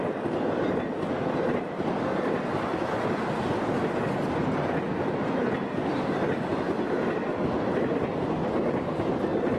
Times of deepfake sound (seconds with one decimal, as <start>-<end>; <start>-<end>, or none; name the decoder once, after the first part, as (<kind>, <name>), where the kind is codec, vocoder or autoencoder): 2.1-3.4 (vocoder, BigVGAN v2); 6.5-8.4